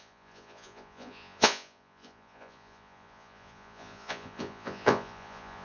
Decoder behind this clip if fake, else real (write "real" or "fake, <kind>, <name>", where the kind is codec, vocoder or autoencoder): fake, vocoder, Vocos